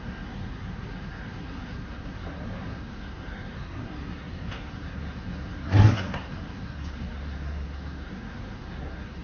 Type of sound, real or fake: fake